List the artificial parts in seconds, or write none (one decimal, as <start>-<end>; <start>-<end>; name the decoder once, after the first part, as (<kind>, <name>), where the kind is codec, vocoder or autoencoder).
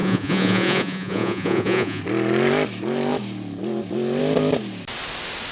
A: 0.0-2.0 (vocoder, Vocos)